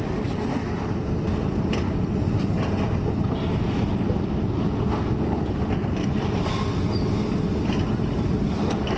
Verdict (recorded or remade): recorded